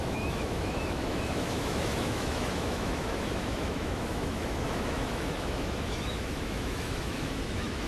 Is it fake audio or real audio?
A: fake